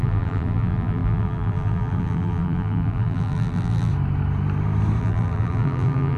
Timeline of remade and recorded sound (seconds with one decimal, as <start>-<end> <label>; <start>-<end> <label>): 0.0-3.9 remade; 3.9-5.0 recorded; 5.0-6.2 remade